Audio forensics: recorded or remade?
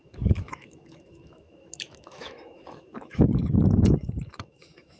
remade